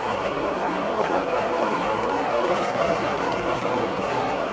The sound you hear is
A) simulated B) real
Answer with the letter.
A